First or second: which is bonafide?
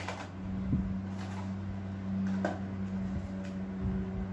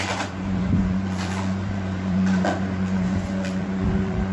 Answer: first